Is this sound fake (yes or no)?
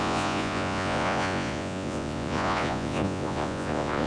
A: yes